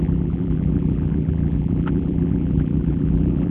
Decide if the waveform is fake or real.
fake